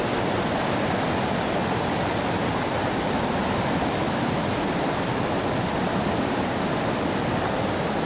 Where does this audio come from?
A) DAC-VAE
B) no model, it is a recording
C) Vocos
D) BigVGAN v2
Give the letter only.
B